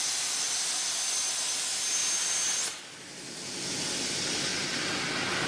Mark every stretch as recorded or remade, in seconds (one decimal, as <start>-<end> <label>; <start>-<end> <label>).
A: 0.0-5.5 recorded